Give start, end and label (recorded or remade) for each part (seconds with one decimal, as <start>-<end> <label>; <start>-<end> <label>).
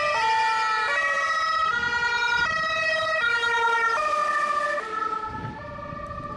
0.0-4.2 remade; 4.2-5.0 recorded; 5.0-6.4 remade